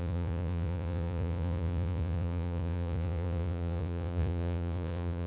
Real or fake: fake